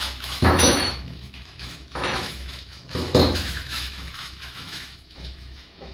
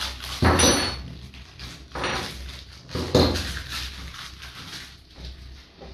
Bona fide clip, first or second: second